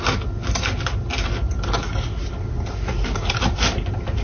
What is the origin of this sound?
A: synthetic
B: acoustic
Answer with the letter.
B